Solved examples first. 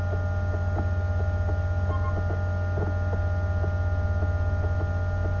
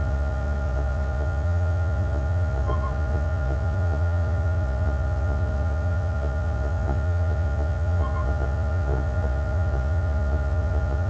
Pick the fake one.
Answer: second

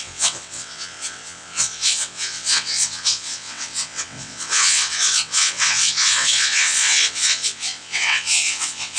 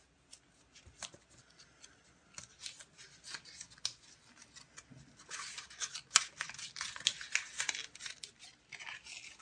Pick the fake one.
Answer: first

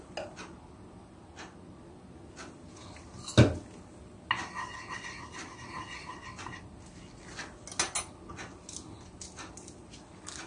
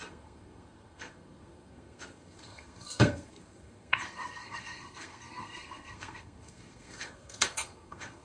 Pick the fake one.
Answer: second